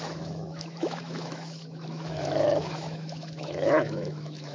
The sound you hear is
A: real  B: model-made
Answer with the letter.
B